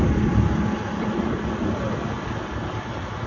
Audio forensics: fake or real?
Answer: real